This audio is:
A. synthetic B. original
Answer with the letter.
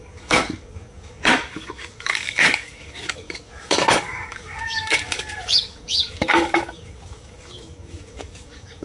A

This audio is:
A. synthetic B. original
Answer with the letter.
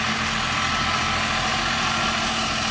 B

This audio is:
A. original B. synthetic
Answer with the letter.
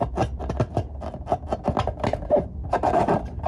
B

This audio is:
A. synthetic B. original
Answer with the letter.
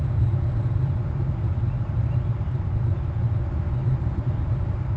B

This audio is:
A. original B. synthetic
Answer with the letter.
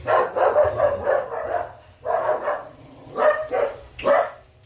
B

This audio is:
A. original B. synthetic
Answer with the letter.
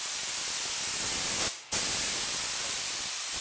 B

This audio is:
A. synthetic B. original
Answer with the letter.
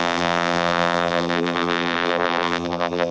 A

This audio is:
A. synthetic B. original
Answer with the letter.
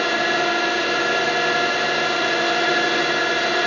B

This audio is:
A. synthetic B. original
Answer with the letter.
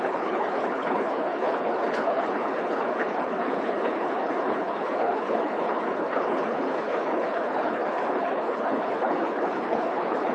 A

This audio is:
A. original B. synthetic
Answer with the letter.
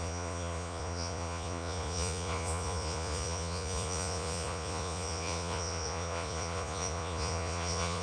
B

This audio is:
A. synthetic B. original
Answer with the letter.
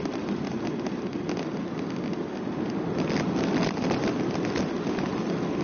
B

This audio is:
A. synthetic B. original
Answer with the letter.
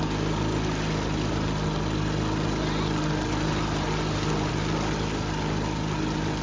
B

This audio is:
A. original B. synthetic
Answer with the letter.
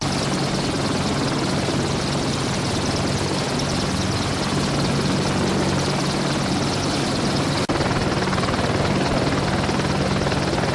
A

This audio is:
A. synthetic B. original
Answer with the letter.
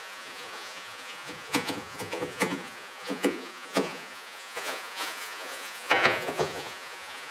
A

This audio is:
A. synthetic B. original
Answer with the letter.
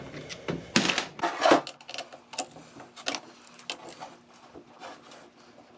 B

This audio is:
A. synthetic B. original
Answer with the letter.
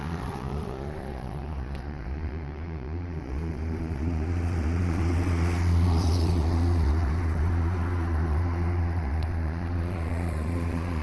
A